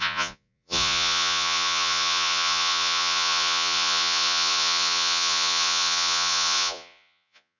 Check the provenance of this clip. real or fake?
fake